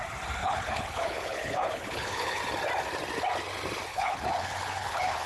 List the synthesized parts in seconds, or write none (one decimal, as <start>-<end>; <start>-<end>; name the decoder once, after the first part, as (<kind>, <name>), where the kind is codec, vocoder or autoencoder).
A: 0.4-2.4 (codec, HILCodec); 3.9-5.3